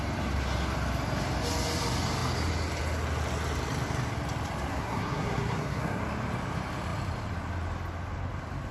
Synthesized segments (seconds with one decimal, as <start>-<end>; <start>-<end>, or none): 4.7-6.0